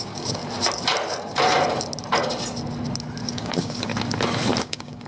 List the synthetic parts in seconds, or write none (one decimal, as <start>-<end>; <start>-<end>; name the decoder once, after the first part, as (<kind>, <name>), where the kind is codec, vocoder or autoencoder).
0.0-0.4 (codec, DAC); 3.2-3.9; 4.6-5.1